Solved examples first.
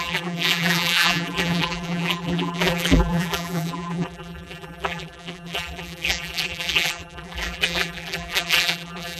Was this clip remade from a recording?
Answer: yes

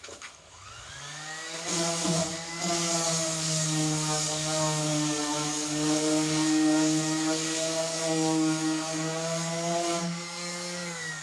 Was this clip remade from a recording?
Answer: yes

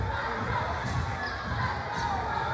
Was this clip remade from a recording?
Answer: no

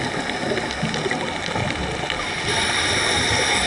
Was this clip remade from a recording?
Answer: no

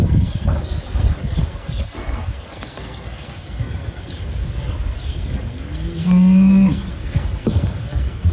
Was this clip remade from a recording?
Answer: yes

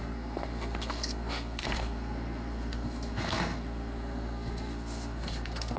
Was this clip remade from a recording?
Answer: yes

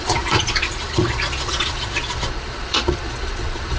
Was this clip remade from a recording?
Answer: yes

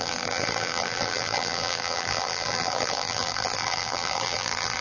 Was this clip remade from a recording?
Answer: yes